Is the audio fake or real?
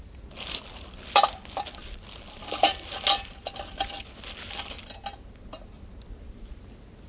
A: real